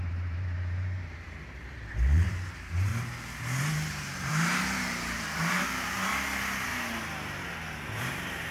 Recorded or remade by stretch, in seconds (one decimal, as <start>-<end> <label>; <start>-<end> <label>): 0.0-6.7 remade; 6.7-8.0 recorded; 8.0-8.5 remade